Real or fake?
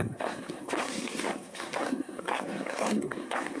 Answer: fake